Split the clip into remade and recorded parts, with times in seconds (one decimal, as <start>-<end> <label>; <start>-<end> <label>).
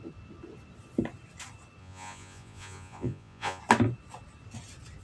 0.0-1.8 recorded; 1.8-3.6 remade; 3.6-5.0 recorded